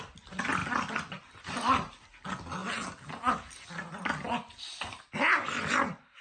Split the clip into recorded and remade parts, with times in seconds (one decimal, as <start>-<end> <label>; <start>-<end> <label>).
0.0-6.2 recorded